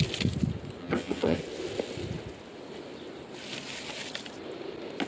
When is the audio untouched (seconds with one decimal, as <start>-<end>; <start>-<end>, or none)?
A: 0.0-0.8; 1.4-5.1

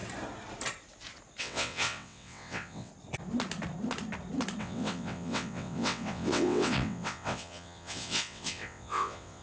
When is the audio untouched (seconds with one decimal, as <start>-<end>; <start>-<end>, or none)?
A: 0.0-1.4; 2.9-4.6

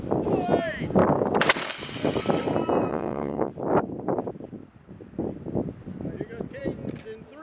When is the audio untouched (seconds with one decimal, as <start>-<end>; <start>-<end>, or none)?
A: 0.0-2.9; 3.5-7.4

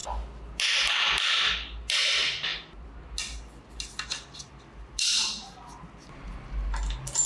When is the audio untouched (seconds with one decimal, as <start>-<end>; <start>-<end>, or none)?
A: 0.0-7.3

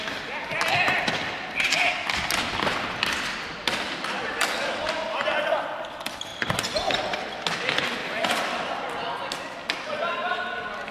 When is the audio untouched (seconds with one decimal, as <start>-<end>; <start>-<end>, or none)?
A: 0.0-1.2; 1.9-6.3; 7.1-10.9

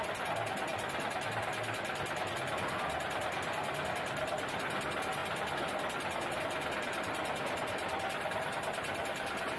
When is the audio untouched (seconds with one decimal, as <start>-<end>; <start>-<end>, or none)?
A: 0.0-9.6

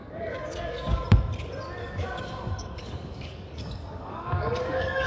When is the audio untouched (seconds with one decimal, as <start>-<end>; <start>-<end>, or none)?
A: 1.0-1.8

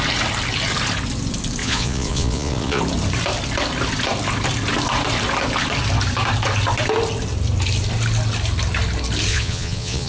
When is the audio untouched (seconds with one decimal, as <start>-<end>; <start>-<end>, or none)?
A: 0.0-1.6; 2.8-9.3